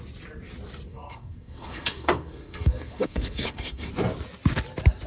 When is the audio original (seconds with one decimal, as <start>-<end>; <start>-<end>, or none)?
0.0-0.9; 3.9-5.1